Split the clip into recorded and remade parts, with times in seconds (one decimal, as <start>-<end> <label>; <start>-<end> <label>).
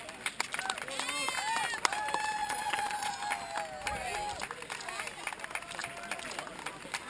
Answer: 0.0-2.4 recorded; 2.4-3.1 remade; 3.1-7.1 recorded